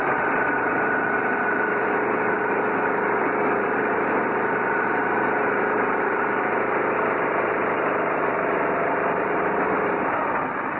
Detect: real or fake fake